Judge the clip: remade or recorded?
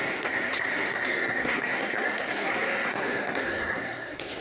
remade